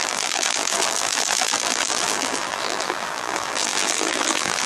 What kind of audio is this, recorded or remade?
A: remade